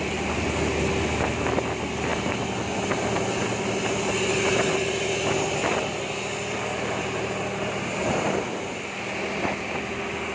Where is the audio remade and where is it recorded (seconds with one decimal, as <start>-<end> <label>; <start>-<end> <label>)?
0.0-10.3 recorded